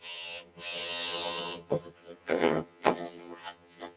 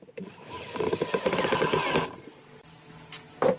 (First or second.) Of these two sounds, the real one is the second